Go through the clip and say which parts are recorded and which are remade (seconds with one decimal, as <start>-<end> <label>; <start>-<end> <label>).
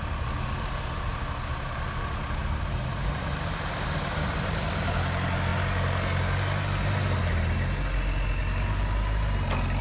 0.0-2.4 recorded; 2.4-4.9 remade; 4.9-9.8 recorded